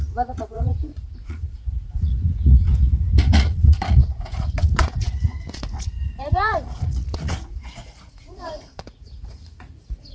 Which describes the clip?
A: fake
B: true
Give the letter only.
A